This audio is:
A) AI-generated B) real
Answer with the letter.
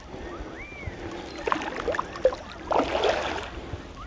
B